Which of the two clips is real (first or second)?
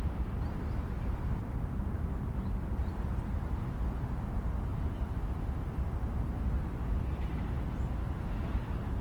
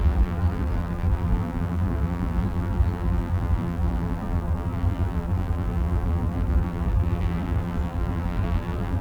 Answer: first